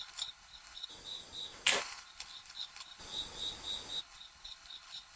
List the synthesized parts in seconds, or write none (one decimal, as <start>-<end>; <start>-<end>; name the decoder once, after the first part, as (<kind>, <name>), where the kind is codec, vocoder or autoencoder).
0.0-0.9 (codec, HILCodec); 1.8-3.0; 4.0-5.2